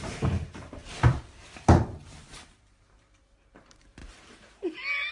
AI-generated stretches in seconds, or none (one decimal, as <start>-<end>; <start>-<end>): 0.0-5.1